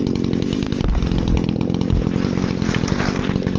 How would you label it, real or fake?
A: real